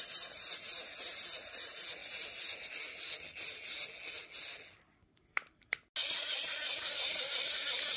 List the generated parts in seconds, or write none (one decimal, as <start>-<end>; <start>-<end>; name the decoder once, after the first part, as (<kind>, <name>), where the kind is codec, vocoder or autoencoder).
none

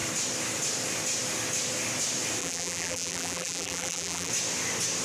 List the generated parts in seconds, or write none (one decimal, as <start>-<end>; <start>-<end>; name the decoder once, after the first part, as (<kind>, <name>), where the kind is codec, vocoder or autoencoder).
2.4-4.3 (vocoder, BigVGAN v2)

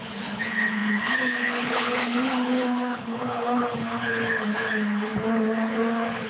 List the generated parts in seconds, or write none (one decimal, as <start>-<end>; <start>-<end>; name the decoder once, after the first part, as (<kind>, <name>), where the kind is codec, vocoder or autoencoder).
0.0-6.3 (codec, HILCodec)

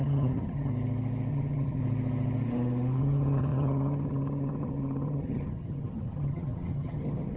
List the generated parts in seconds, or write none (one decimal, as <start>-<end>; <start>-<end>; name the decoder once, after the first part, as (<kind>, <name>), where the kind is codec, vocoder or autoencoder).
0.0-0.7 (vocoder, HiFi-GAN); 1.3-1.8; 3.0-7.4

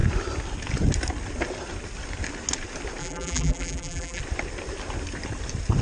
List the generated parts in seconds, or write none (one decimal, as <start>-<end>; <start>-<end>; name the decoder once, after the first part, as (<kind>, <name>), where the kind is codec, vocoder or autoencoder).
3.0-4.2 (vocoder, BigVGAN v2)

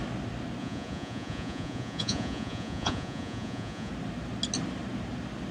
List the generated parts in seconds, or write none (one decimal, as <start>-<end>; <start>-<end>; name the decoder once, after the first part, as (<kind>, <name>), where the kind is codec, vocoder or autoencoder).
0.6-3.9 (vocoder, Vocos)